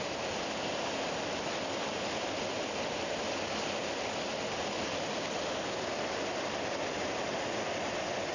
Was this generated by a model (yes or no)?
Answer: no